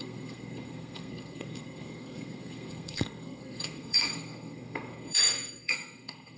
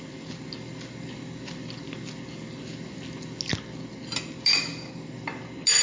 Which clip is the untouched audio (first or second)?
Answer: second